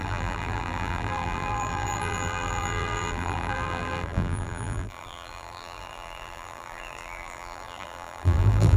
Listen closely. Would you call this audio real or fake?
fake